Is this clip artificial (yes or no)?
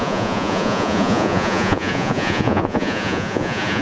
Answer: yes